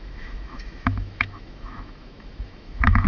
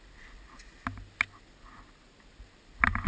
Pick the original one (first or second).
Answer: second